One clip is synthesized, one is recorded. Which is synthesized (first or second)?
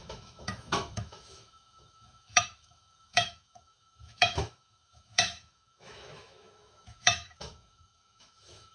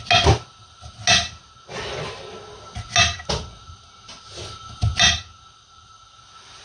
first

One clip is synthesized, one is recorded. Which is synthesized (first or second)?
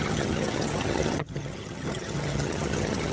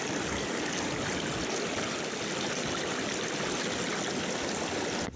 first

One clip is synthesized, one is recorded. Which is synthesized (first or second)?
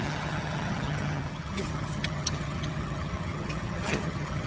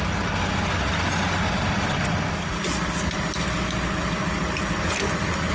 first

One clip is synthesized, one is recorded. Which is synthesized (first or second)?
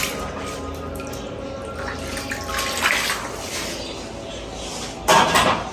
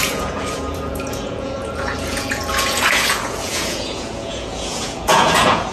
second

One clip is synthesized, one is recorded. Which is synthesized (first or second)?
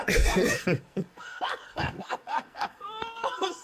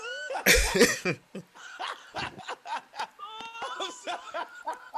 first